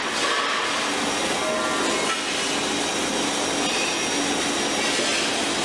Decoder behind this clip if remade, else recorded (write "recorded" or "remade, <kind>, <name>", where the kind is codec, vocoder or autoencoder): recorded